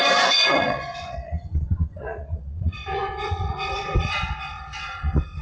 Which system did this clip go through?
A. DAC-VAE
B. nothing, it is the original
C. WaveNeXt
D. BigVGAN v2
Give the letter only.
C